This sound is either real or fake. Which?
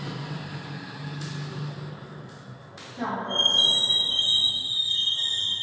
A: real